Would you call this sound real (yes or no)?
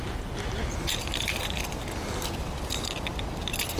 no